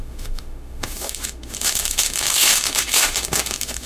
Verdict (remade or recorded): remade